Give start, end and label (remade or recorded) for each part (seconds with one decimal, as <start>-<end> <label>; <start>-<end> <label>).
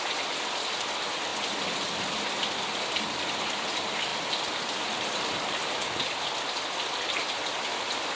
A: 0.0-8.2 recorded